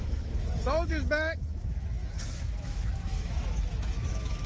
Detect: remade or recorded remade